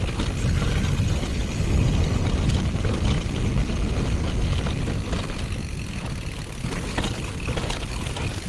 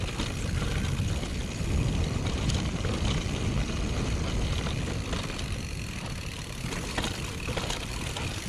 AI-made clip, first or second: second